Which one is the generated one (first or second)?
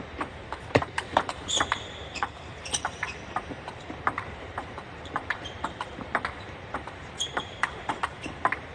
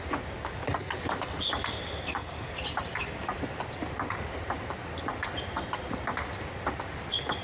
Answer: first